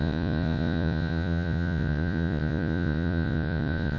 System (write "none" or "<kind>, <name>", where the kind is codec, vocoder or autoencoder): vocoder, Vocos